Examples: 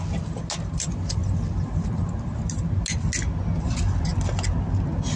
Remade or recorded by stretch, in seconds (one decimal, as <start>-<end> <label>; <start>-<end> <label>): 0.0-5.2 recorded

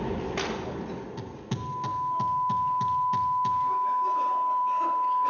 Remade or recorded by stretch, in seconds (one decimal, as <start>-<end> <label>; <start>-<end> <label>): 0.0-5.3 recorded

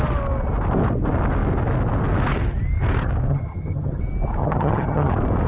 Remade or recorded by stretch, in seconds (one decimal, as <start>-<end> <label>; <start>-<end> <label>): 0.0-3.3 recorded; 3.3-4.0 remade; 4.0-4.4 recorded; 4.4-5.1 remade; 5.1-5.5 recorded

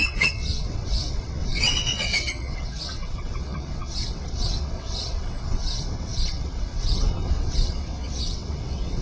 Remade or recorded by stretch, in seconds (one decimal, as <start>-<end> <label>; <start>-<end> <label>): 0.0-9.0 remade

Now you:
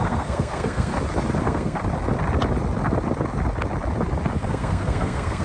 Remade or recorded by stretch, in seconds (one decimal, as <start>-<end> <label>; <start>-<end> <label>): 0.0-0.9 remade; 0.9-1.4 recorded; 1.4-1.8 remade; 1.8-4.4 recorded; 4.4-5.4 remade

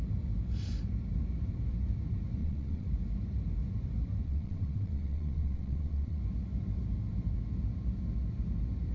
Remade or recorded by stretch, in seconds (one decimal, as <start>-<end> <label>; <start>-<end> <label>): 0.0-2.4 recorded; 2.4-2.9 remade; 2.9-4.2 recorded; 4.2-6.2 remade; 6.2-8.9 recorded

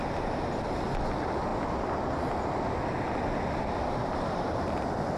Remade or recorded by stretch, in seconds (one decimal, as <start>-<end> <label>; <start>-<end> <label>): 0.0-4.0 recorded; 4.0-4.8 remade; 4.8-5.2 recorded

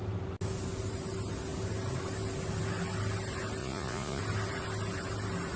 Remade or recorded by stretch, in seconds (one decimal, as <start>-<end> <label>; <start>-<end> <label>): 0.0-3.6 recorded; 3.6-4.2 remade; 4.2-5.6 recorded